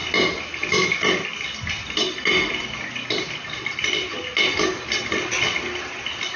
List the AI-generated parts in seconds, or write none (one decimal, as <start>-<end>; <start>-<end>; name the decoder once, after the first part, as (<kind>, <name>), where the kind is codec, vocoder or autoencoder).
none